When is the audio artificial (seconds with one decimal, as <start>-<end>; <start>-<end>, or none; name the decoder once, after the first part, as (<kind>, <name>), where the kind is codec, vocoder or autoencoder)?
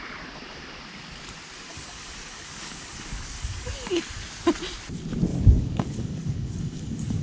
1.7-3.9 (codec, DAC); 5.3-7.2